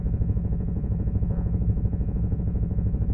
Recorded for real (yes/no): no